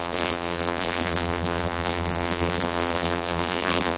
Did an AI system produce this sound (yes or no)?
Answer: yes